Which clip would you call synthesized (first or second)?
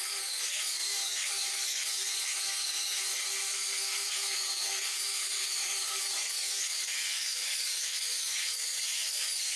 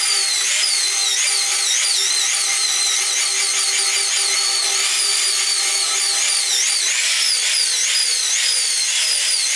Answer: first